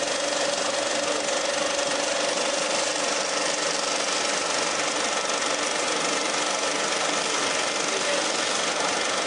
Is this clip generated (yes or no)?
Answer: no